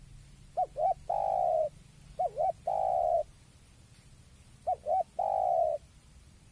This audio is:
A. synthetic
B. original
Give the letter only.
B